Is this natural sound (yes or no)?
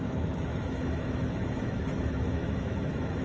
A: no